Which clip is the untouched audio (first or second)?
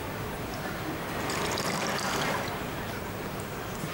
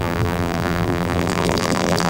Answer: first